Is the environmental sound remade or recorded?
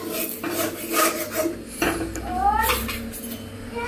recorded